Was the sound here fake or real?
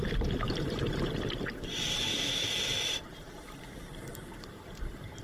fake